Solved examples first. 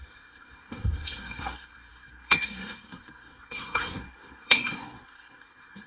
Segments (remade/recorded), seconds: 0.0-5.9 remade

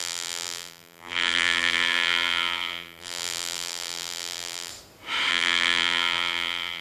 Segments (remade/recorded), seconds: 0.0-4.7 remade; 4.7-5.3 recorded; 5.3-6.8 remade

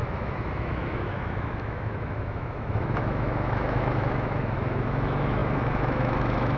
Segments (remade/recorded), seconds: 0.0-6.6 remade

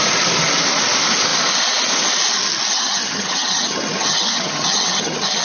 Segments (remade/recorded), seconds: 0.0-2.7 recorded; 2.7-5.4 remade

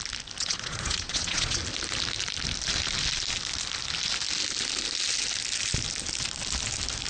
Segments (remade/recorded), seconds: 0.0-0.4 recorded; 0.4-1.6 remade; 1.6-7.1 recorded

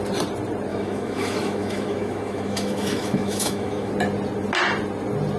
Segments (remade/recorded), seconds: 0.0-0.7 recorded; 0.7-3.9 remade; 3.9-5.4 recorded

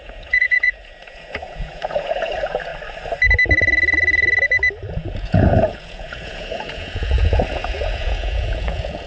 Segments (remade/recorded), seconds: 0.0-2.7 remade; 2.7-4.9 recorded; 4.9-9.1 remade